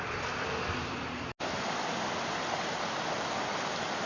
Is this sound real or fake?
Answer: real